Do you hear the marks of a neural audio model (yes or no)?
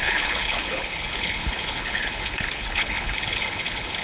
yes